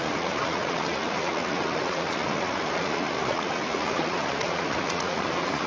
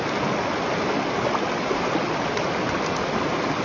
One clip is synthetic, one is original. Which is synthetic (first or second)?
first